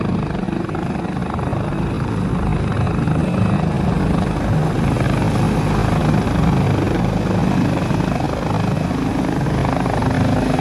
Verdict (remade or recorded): recorded